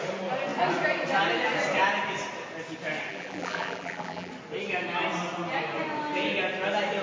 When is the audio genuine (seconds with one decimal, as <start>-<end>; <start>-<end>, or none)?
0.0-3.1; 4.3-7.0